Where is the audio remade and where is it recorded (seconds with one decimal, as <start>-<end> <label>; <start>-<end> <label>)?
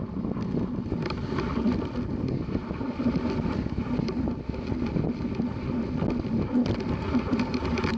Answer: 0.0-8.0 recorded